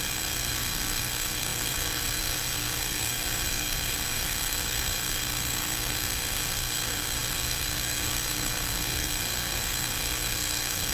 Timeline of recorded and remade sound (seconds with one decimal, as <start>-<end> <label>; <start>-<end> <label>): 0.0-10.9 remade